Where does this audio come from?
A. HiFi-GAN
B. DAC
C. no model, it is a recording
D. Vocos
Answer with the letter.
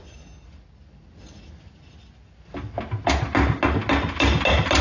C